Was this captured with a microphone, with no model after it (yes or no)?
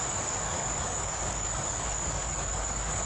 no